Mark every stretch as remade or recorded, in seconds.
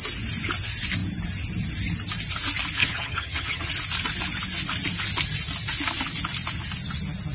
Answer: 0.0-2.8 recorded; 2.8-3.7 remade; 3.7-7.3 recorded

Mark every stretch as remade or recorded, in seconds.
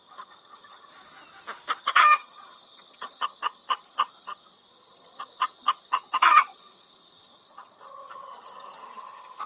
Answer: 0.0-0.9 remade; 0.9-1.8 recorded; 1.8-9.5 remade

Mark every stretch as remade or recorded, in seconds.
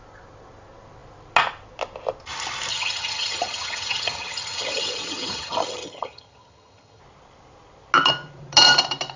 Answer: 0.0-2.7 recorded; 2.7-7.0 remade; 7.0-9.2 recorded